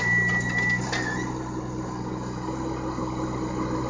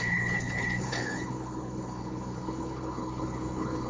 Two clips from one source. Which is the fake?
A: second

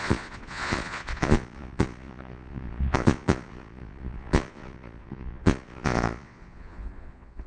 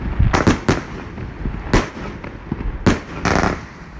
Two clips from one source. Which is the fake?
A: first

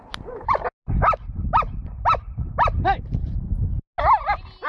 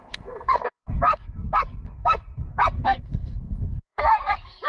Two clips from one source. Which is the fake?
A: second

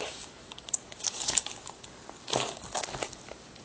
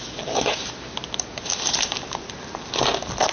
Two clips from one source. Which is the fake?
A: first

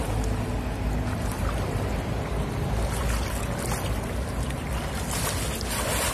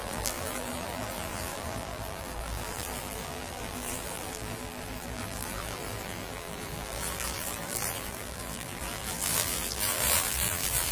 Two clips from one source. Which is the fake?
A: second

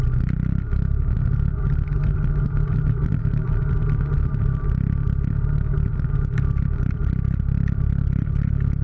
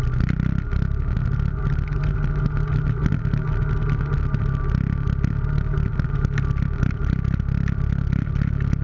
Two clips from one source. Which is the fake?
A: first